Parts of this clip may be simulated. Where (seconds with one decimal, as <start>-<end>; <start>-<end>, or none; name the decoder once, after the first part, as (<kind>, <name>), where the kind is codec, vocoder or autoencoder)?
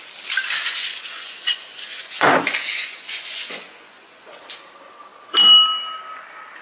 0.6-4.3 (vocoder, Vocos)